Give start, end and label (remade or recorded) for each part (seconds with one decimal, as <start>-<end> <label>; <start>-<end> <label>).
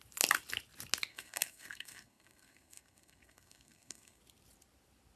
0.0-1.1 recorded; 1.1-4.2 remade; 4.2-5.2 recorded